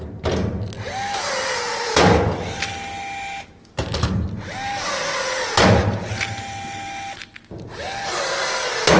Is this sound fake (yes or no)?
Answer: no